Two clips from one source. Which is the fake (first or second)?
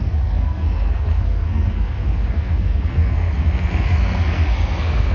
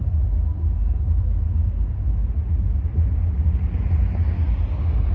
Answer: first